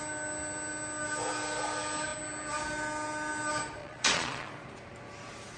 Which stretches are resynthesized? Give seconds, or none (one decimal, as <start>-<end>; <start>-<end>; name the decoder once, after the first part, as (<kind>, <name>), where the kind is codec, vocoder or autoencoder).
3.8-4.5 (vocoder, Vocos)